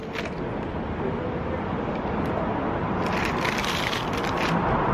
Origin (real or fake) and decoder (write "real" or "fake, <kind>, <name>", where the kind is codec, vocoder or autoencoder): real